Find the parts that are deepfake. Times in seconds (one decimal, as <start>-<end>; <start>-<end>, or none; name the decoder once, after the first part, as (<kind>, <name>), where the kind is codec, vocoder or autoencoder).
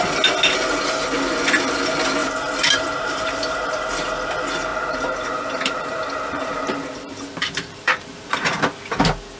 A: 2.2-3.8 (vocoder, BigVGAN v2); 4.7-8.6